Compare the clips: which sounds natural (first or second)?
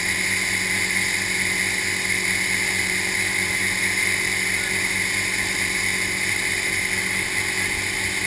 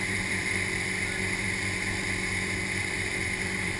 first